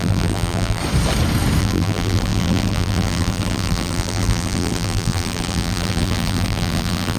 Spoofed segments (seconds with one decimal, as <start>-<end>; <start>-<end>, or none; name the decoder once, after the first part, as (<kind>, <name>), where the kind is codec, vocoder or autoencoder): 0.0-0.8 (vocoder, BigVGAN v2); 1.6-7.2

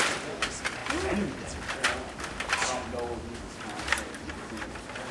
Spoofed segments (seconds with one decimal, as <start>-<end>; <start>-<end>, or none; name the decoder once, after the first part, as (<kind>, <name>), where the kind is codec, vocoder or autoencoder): none